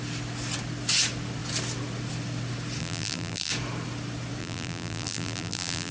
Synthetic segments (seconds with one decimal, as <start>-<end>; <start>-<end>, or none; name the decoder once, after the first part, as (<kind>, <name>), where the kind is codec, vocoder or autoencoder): 2.8-3.5 (vocoder, BigVGAN v2); 4.4-5.9